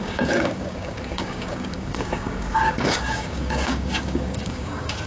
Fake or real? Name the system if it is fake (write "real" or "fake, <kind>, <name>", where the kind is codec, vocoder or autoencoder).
fake, codec, DAC